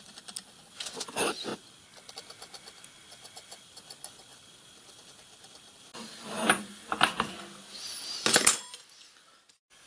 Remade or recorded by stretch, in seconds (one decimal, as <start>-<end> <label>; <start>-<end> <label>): 0.0-9.9 recorded